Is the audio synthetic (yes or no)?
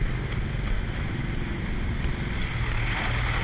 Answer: no